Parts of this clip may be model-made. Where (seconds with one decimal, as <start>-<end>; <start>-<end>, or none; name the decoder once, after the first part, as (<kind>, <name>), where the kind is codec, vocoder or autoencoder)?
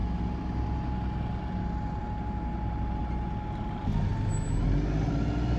none